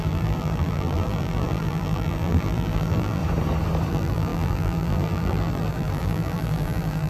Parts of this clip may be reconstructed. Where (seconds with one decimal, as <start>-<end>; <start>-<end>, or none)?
0.0-3.2; 3.9-7.1